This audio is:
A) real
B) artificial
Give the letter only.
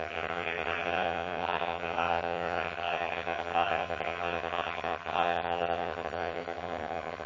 B